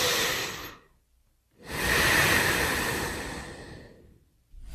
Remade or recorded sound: remade